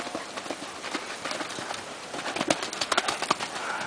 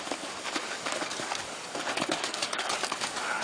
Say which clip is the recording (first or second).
first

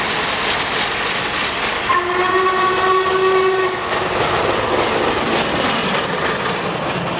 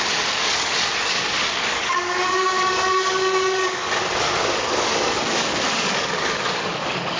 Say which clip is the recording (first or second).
first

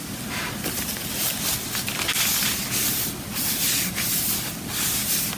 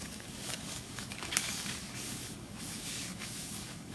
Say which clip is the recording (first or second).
first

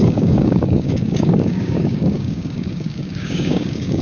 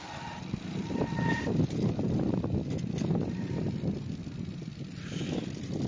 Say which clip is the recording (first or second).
second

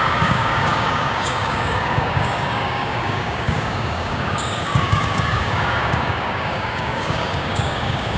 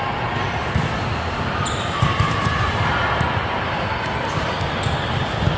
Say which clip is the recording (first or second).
second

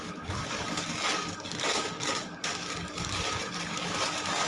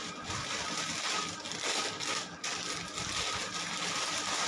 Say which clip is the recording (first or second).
second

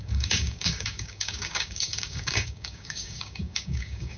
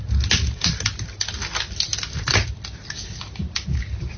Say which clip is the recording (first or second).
second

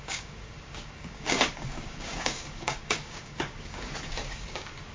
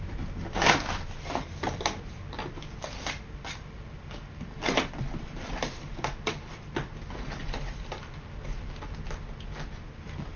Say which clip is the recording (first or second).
second